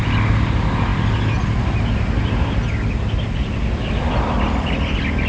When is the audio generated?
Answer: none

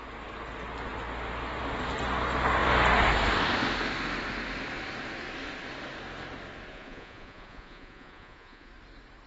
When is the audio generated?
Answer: 6.7-8.7 (vocoder, Vocos)

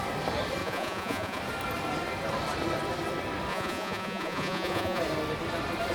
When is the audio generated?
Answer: 0.6-1.4 (vocoder, Vocos); 3.5-5.0

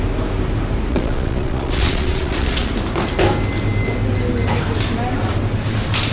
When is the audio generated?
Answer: 0.9-2.7 (vocoder, Vocos)

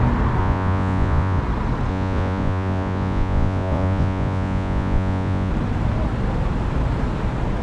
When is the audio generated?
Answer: 0.4-1.4 (vocoder, Vocos); 1.9-5.5